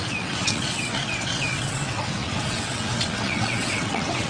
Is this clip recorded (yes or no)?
no